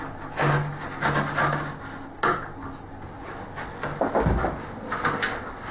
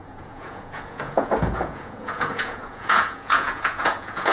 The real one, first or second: first